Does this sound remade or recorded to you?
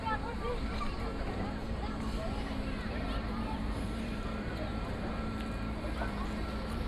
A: remade